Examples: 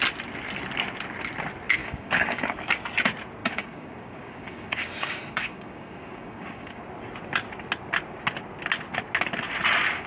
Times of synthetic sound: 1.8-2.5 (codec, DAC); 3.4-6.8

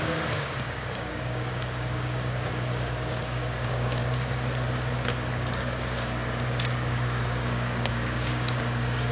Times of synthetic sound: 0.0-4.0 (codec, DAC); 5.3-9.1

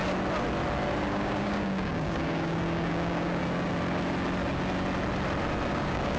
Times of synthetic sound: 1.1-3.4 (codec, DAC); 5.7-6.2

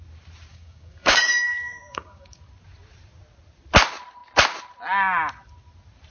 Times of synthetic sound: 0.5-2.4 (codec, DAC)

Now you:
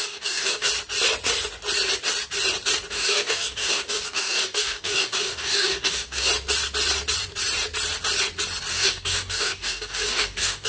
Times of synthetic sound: 0.0-0.7 (codec, DAC); 2.9-6.3; 8.7-10.7

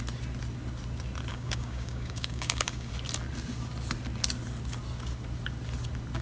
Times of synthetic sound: 1.3-2.9 (codec, DAC)